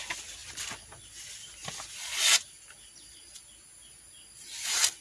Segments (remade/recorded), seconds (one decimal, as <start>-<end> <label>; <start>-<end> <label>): 0.0-5.0 recorded